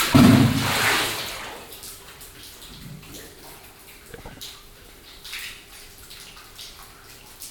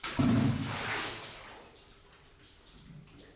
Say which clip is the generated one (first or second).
first